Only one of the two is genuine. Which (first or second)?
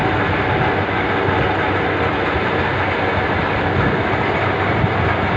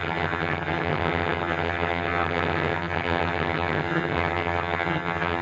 first